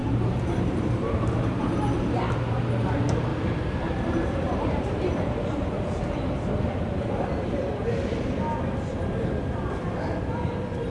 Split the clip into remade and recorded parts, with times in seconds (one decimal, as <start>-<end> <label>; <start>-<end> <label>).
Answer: 0.0-1.6 remade; 1.6-3.3 recorded; 3.3-6.5 remade; 6.5-10.9 recorded